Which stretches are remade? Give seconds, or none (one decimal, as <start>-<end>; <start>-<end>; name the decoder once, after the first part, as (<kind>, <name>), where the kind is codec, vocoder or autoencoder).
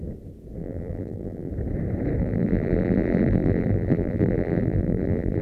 0.6-1.5 (vocoder, BigVGAN v2); 2.2-5.4